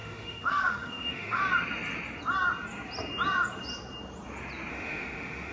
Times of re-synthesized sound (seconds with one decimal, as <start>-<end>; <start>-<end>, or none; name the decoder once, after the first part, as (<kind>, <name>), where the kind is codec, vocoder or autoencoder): 0.0-1.4 (autoencoder, DAC-VAE); 4.7-5.5